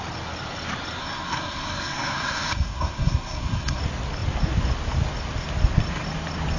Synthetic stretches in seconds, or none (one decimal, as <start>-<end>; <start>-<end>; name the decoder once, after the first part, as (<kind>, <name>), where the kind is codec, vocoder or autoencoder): 1.0-3.8 (codec, SNAC)